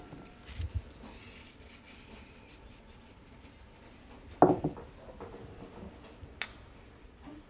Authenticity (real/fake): real